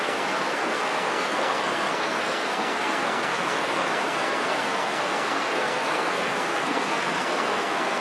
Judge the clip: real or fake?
fake